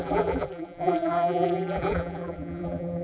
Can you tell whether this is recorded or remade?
remade